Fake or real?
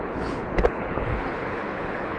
fake